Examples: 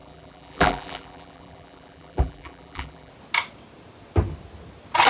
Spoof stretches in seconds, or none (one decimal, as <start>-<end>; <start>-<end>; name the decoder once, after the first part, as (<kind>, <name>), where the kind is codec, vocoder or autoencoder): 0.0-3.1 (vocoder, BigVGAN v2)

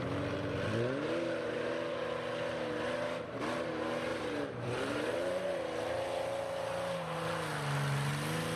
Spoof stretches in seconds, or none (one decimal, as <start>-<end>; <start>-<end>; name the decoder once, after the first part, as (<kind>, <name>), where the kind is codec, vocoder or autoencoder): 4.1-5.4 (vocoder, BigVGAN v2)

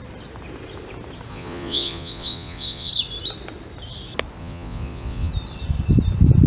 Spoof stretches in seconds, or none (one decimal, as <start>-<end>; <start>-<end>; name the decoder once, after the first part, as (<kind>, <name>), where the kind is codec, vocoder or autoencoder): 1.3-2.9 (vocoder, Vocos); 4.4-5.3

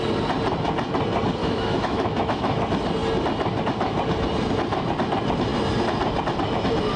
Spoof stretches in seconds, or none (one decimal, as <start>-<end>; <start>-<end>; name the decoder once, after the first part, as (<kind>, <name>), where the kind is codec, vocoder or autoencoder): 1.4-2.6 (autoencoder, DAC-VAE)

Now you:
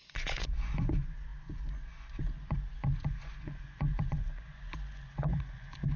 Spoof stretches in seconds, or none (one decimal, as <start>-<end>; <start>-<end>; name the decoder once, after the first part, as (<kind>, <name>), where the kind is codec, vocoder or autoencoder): 0.0-6.0 (vocoder, Vocos)